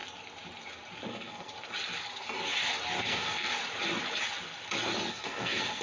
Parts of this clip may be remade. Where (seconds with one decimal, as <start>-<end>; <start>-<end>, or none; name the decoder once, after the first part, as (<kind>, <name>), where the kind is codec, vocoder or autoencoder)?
1.1-1.5 (codec, SNAC); 3.0-3.6; 5.1-5.8